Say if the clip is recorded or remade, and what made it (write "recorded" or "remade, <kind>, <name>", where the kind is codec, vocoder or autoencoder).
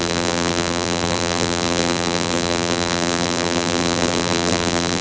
remade, vocoder, BigVGAN v2